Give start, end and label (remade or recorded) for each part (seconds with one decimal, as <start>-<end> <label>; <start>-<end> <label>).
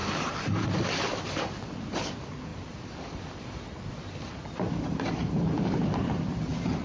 0.0-1.4 remade; 1.4-2.5 recorded; 2.5-6.1 remade; 6.1-6.8 recorded